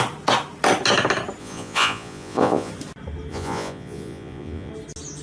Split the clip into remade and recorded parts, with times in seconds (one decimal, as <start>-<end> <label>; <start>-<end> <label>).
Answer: 0.0-1.4 recorded; 1.4-2.7 remade; 2.7-3.3 recorded; 3.3-4.7 remade; 4.7-5.2 recorded

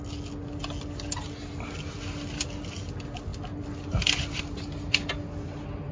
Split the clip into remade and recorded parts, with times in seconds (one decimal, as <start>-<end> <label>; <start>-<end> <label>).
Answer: 0.0-5.9 recorded

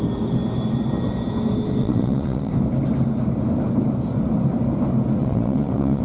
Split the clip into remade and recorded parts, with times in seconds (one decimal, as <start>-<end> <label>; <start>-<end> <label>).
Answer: 0.0-1.8 recorded; 1.8-2.5 remade; 2.5-5.2 recorded; 5.2-6.0 remade

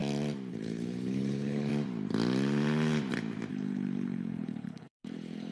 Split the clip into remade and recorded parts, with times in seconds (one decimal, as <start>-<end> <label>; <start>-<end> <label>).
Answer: 0.0-0.5 recorded; 0.5-1.7 remade; 1.7-3.5 recorded; 3.5-5.5 remade

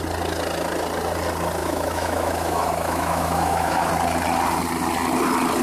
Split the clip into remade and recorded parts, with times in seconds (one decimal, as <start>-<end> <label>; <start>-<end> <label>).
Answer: 0.0-1.6 recorded; 1.6-3.9 remade; 3.9-5.6 recorded